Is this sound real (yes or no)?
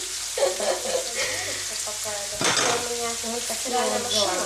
yes